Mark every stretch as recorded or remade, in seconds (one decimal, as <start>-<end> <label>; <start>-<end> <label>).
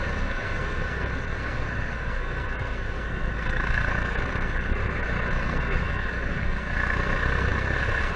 0.0-8.2 remade